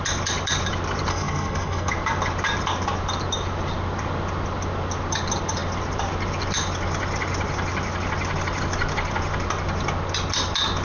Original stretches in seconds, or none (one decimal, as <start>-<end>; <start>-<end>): 0.0-1.1; 1.9-10.8